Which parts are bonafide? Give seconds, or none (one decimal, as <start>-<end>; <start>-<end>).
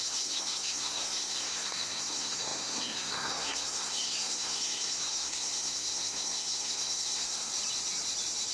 7.5-8.5